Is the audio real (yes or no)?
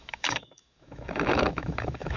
no